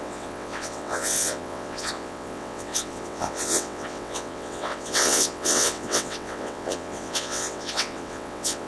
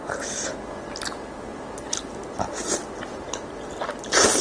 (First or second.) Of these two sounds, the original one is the second